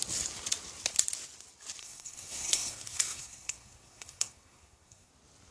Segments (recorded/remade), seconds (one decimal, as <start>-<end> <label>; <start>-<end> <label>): 0.0-1.8 recorded; 1.8-5.1 remade; 5.1-5.5 recorded